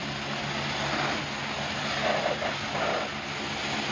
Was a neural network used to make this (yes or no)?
no